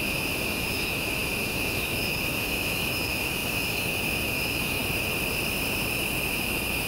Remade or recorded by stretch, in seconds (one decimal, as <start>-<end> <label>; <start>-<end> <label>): 0.0-4.8 remade; 4.8-6.3 recorded; 6.3-6.9 remade